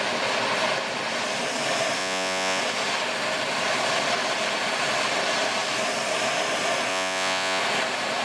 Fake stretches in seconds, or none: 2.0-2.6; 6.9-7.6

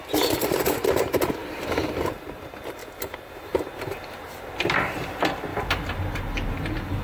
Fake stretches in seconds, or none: 1.4-2.3; 2.8-3.3; 5.5-6.6

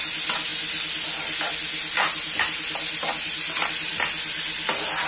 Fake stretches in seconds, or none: none

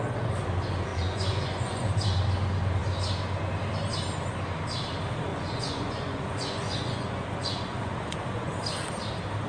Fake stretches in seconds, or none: 0.9-1.9; 5.3-8.5

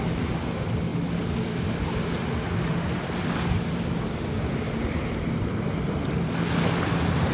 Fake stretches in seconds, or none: none

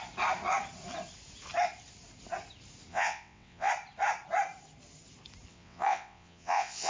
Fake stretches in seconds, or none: 2.9-3.7; 5.5-6.9

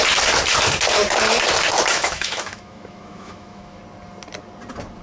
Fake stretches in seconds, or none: 1.9-3.8

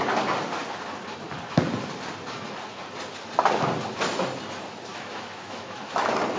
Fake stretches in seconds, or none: 4.9-5.9